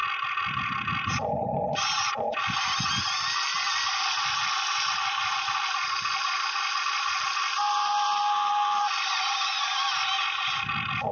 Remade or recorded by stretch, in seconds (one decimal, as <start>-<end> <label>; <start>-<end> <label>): 0.0-11.1 recorded